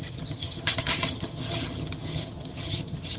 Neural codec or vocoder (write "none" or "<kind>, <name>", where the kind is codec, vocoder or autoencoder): vocoder, HiFi-GAN